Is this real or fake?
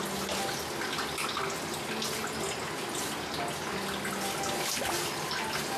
real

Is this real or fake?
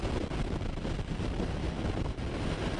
real